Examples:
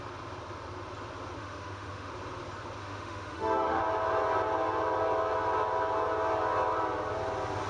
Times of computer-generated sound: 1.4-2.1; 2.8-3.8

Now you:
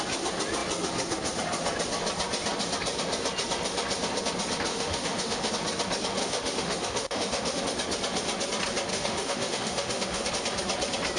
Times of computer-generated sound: 4.7-5.5; 6.2-7.6; 8.9-10.3

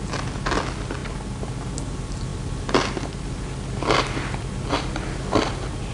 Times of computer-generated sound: none

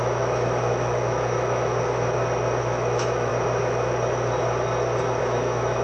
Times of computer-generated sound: 0.0-1.7; 2.6-3.3; 5.2-5.8

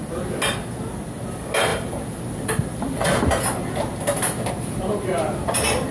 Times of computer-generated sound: none

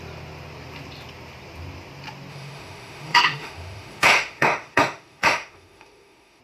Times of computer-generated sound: 2.3-6.4

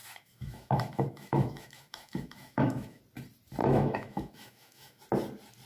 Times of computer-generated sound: 0.0-3.0; 3.6-5.0

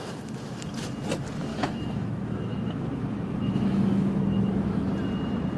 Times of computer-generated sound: 1.5-4.9